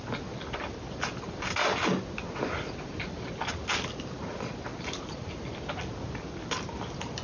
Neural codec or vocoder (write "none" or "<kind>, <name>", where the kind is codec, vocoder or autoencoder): none